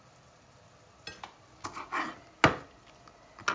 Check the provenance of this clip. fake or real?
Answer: real